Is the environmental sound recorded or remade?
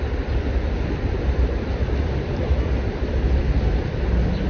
remade